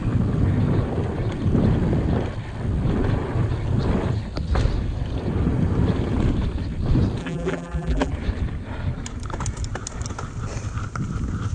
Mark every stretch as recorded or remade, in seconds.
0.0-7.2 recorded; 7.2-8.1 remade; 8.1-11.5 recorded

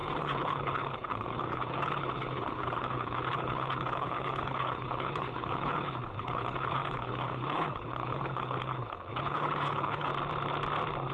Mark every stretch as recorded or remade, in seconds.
0.0-10.1 remade; 10.1-11.1 recorded

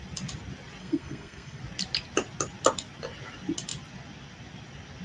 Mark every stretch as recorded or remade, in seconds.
0.0-0.8 recorded; 0.8-1.6 remade; 1.6-5.0 recorded